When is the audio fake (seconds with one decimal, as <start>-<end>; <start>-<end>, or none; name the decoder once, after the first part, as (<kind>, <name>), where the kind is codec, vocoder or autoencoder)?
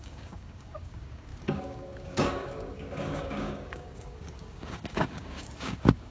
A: 0.0-6.1 (codec, DAC)